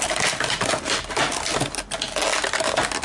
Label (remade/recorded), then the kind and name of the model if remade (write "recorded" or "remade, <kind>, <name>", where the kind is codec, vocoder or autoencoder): recorded